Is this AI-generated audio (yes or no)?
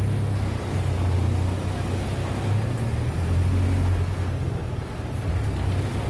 no